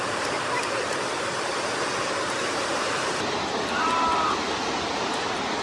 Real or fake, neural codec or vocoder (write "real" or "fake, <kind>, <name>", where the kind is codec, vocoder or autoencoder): fake, vocoder, BigVGAN v2